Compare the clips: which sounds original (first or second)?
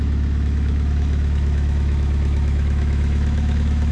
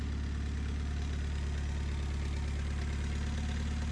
second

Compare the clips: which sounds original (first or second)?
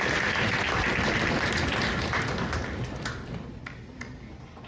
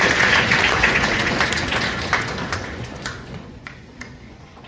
first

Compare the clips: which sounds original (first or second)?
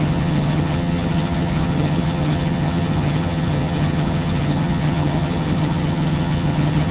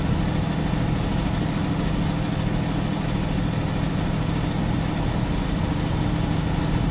second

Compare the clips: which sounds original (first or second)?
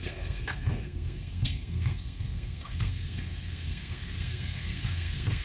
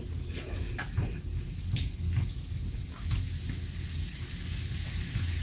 second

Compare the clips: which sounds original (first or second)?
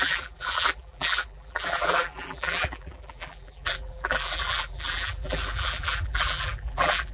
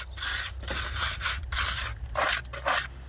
second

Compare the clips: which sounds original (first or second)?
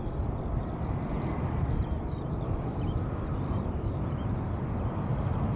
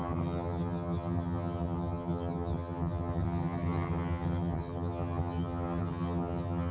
first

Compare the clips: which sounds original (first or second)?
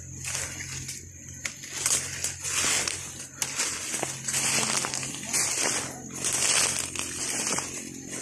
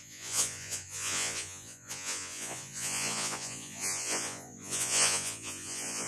first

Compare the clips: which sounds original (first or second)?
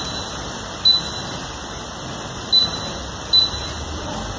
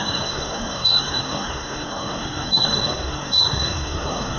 first